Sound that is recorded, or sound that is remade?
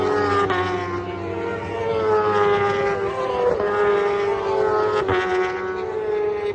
recorded